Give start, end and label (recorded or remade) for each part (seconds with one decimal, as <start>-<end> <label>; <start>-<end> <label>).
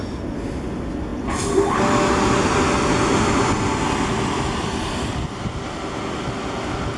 0.0-7.0 recorded